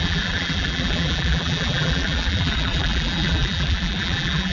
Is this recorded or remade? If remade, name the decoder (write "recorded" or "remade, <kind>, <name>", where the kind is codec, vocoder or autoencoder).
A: remade, vocoder, BigVGAN v2